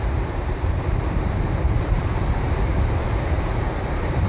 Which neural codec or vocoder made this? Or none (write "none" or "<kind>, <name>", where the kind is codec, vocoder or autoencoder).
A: vocoder, BigVGAN v2